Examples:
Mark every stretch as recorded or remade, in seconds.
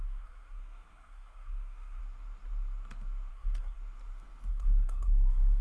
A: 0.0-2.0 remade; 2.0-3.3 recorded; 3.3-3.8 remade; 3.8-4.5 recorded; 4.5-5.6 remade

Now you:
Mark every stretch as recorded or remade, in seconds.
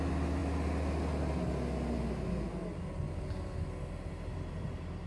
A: 0.0-5.1 recorded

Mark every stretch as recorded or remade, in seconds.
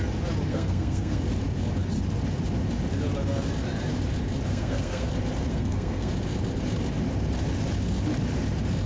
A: 0.0-0.5 recorded; 0.5-1.2 remade; 1.2-4.5 recorded; 4.5-5.1 remade; 5.1-5.5 recorded; 5.5-6.1 remade; 6.1-8.9 recorded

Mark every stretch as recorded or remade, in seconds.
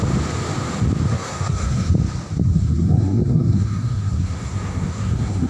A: 0.0-1.1 recorded; 1.1-1.9 remade; 1.9-2.5 recorded; 2.5-5.5 remade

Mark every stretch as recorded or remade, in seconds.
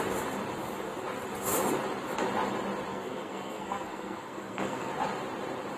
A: 0.0-2.9 recorded; 2.9-4.9 remade; 4.9-5.8 recorded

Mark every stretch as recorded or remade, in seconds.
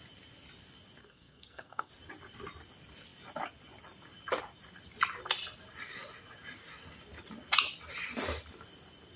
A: 0.0-1.0 recorded; 1.0-1.9 remade; 1.9-9.2 recorded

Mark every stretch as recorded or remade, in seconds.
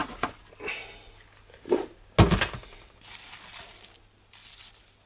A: 0.0-5.1 recorded